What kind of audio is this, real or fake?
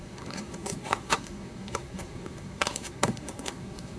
fake